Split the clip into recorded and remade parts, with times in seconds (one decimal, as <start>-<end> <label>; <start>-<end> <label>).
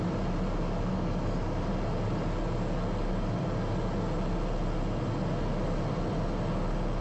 0.0-0.9 recorded; 0.9-1.7 remade; 1.7-7.0 recorded